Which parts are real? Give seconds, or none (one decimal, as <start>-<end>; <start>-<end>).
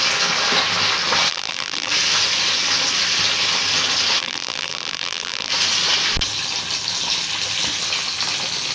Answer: 0.0-1.3; 1.9-4.2; 5.5-8.7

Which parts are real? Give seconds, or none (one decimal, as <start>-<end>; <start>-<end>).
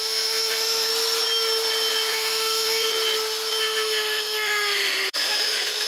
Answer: 0.9-2.1; 2.9-3.6